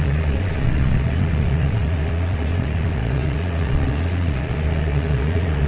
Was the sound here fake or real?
fake